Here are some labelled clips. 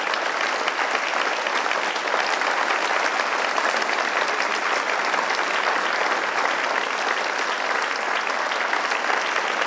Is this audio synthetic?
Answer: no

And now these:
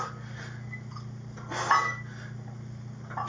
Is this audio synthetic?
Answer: no